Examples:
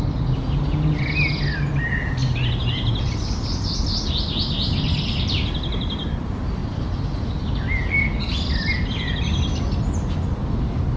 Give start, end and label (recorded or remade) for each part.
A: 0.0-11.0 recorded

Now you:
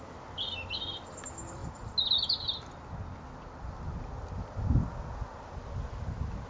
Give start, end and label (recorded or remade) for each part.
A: 0.0-6.5 recorded

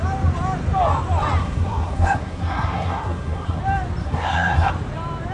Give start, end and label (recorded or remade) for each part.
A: 0.0-1.4 recorded; 1.4-3.6 remade; 3.6-4.0 recorded; 4.0-4.7 remade; 4.7-5.3 recorded

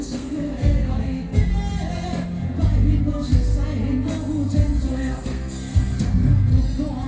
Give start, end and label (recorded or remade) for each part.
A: 0.0-1.5 remade; 1.5-3.0 recorded; 3.0-3.5 remade; 3.5-4.9 recorded; 4.9-6.5 remade; 6.5-7.1 recorded

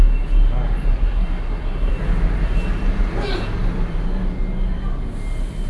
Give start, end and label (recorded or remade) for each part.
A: 0.0-0.9 recorded; 0.9-1.9 remade; 1.9-5.7 recorded